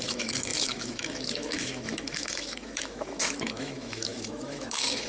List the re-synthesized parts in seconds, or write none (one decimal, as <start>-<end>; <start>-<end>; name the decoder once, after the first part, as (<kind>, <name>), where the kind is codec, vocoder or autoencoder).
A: 0.0-5.1 (autoencoder, DAC-VAE)